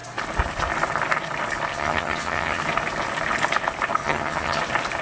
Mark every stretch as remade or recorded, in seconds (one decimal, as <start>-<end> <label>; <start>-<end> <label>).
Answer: 0.0-1.7 recorded; 1.7-2.6 remade; 2.6-4.0 recorded; 4.0-4.6 remade; 4.6-5.0 recorded